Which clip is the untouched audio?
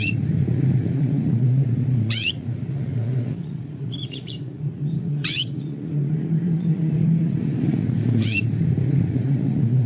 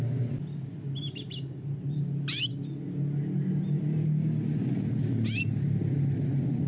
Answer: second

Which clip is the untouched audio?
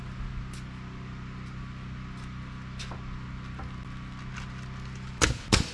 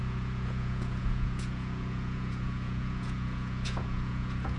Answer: first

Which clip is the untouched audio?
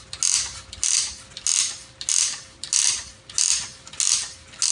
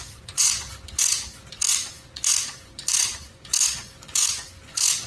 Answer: first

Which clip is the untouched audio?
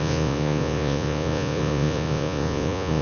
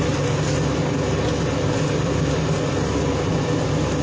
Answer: second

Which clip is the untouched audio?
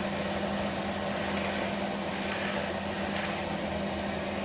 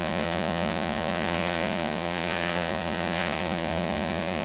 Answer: first